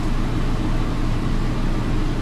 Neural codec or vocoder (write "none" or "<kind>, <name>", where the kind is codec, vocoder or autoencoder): none